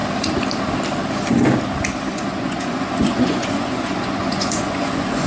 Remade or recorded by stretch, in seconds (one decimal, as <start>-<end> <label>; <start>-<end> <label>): 0.0-2.1 recorded; 2.1-5.3 remade